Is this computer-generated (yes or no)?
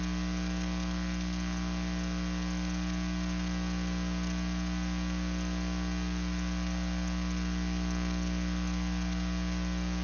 no